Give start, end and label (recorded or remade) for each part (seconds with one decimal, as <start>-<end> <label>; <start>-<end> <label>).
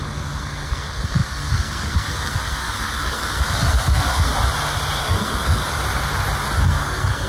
0.0-4.3 remade; 4.3-5.0 recorded; 5.0-5.6 remade; 5.6-6.6 recorded; 6.6-7.3 remade